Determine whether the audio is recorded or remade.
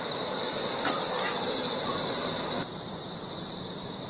remade